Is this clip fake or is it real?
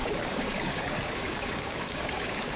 fake